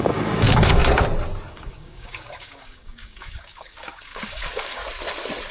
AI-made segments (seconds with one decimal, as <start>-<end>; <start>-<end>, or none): 0.0-0.8; 1.5-4.8